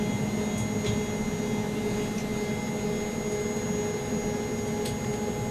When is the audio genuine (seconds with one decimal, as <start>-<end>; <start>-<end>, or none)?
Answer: 0.0-5.5